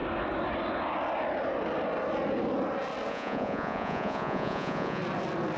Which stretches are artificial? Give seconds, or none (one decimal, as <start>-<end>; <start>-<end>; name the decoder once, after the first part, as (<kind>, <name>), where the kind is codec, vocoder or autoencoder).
3.1-5.0 (vocoder, Vocos)